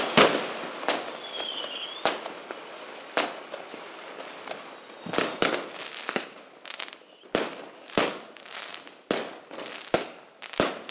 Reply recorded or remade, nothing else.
recorded